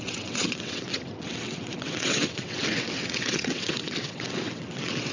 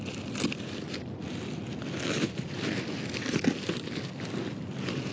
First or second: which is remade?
first